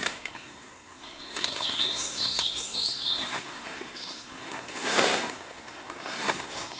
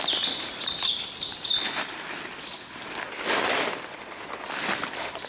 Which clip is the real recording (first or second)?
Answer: second